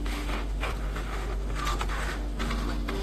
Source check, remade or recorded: remade